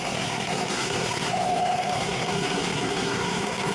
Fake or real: fake